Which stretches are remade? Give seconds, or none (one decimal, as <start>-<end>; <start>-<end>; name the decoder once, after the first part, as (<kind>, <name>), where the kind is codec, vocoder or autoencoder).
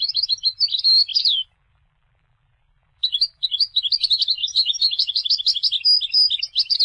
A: 1.1-3.8 (vocoder, BigVGAN v2); 4.4-5.3